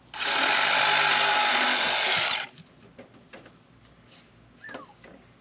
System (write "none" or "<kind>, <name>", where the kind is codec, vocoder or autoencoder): none